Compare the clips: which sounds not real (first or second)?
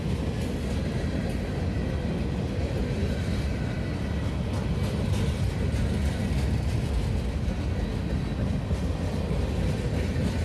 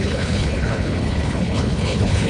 second